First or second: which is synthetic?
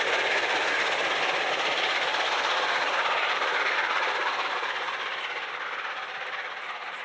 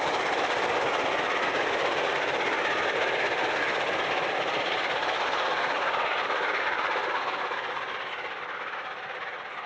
first